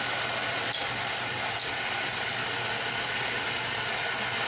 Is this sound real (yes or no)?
yes